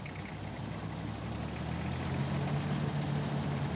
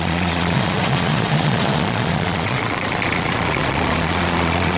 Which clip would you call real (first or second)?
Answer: first